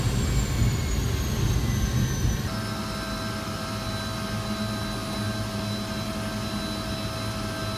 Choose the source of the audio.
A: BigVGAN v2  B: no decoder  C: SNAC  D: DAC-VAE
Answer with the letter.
B